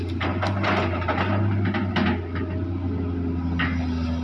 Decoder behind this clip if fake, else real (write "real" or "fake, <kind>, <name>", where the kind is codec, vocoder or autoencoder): real